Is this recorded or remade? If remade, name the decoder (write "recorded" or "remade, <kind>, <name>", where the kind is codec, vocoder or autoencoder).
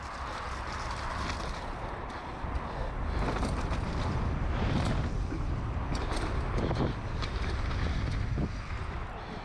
recorded